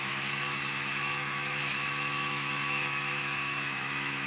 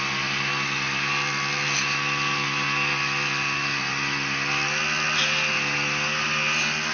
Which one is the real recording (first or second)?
second